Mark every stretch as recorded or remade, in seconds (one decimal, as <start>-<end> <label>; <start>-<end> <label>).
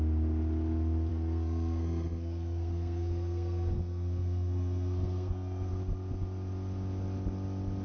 0.0-1.1 recorded; 1.1-5.7 remade; 5.7-7.8 recorded